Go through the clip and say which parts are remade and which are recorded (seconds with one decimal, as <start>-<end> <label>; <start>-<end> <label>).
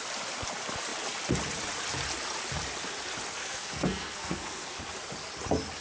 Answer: 0.0-3.4 recorded; 3.4-4.8 remade; 4.8-5.8 recorded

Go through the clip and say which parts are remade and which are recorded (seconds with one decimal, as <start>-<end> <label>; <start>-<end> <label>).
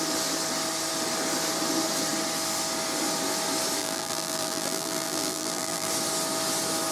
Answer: 0.0-3.8 recorded; 3.8-5.9 remade; 5.9-6.9 recorded